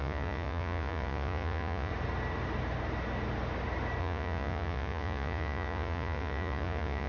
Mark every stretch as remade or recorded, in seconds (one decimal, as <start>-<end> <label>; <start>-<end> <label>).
0.0-1.9 remade; 1.9-4.0 recorded; 4.0-7.1 remade